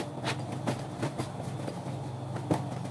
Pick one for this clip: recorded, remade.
recorded